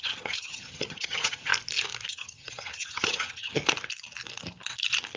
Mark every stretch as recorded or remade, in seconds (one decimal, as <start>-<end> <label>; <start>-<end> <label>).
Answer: 0.0-1.5 remade; 1.5-2.1 recorded; 2.1-3.6 remade; 3.6-5.2 recorded